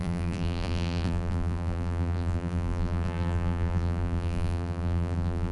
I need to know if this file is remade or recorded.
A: remade